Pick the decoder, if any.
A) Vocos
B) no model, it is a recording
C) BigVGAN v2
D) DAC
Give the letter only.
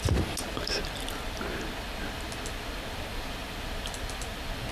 B